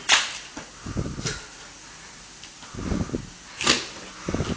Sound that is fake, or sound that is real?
real